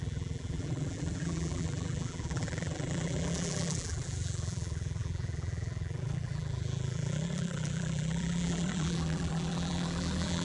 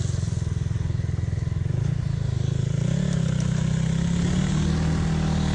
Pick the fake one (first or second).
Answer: first